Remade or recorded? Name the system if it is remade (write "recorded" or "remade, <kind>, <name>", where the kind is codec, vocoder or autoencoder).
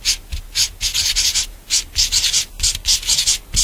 recorded